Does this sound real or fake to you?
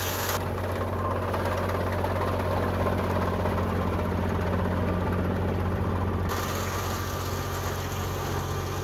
real